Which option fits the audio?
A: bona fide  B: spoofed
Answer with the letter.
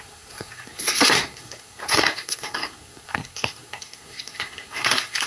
B